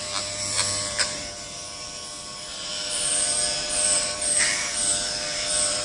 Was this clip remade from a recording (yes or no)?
yes